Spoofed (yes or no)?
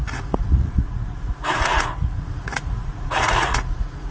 yes